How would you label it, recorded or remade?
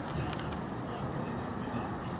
recorded